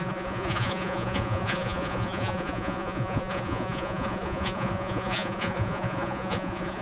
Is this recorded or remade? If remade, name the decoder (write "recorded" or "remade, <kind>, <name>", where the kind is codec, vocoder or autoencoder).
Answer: remade, vocoder, Vocos